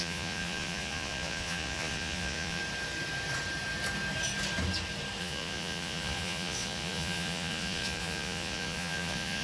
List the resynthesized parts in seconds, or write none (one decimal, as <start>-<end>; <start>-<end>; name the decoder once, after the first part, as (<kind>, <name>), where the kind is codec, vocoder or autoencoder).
0.0-2.6 (vocoder, Vocos); 5.2-9.4